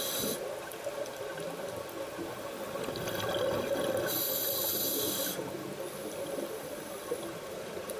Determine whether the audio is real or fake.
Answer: real